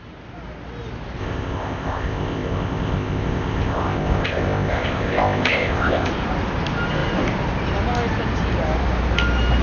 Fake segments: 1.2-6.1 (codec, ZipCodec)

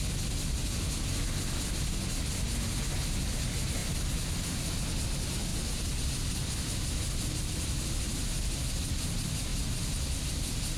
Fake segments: none

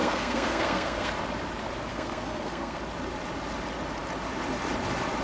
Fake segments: 0.0-1.1 (codec, SNAC); 1.9-2.8

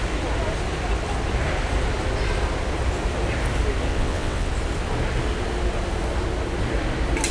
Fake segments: 3.9-4.5 (vocoder, WaveNeXt)

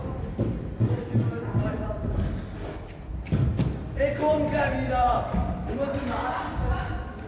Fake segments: 0.0-2.0 (vocoder, BigVGAN v2); 5.0-5.7

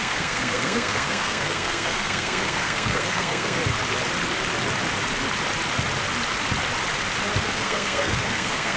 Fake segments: 0.0-3.6 (codec, SNAC); 7.4-8.8